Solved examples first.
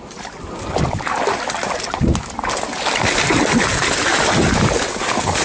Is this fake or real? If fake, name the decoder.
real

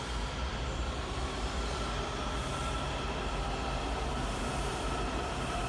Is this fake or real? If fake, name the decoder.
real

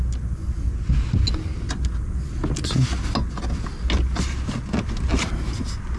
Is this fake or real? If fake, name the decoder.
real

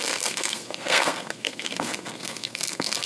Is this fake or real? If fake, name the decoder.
fake, codec, SNAC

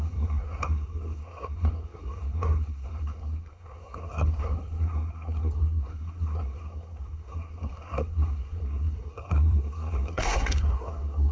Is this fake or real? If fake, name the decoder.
fake, codec, SNAC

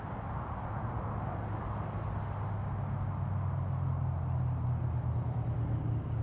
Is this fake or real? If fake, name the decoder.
real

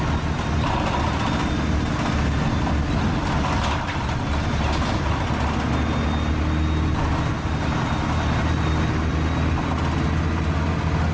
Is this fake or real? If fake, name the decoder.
real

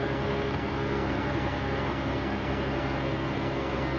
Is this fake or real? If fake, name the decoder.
fake, codec, SNAC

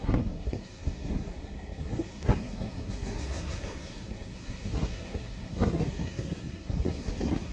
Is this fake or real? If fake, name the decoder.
fake, codec, SNAC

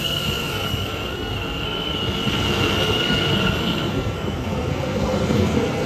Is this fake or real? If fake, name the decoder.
fake, codec, SNAC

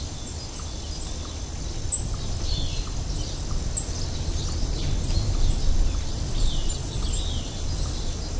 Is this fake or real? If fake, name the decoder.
real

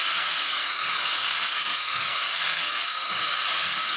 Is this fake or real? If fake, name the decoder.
fake, codec, SNAC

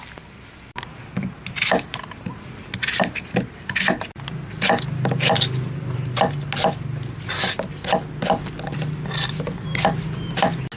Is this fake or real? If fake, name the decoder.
real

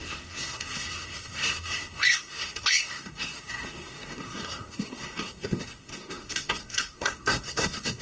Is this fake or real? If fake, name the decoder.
fake, codec, SNAC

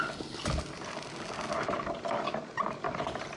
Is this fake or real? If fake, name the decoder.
real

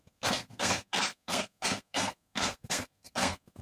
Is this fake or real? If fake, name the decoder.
fake, codec, SNAC